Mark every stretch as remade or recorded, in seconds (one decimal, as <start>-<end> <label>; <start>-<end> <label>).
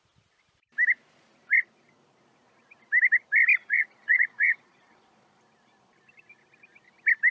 0.0-3.6 recorded; 3.6-5.4 remade; 5.4-7.3 recorded